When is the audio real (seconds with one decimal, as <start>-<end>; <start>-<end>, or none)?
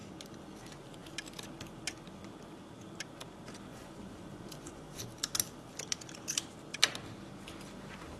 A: 0.0-3.7; 5.0-8.2